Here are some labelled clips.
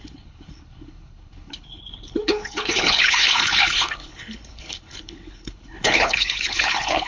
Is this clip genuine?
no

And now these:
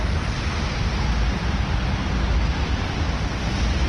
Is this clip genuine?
yes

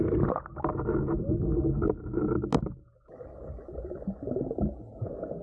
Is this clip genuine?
yes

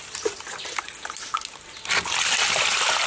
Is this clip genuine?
yes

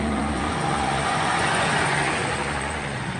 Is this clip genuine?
no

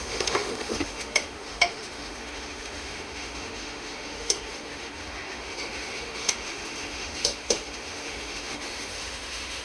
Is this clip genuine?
no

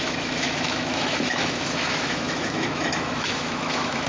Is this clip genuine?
no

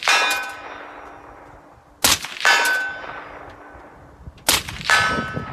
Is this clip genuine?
yes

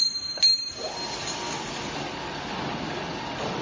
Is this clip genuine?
yes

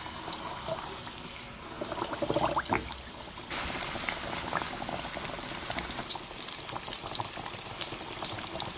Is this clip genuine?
yes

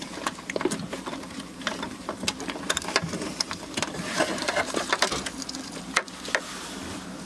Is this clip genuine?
yes